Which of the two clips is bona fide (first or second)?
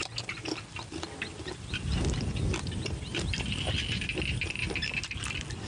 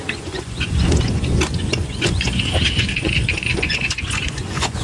first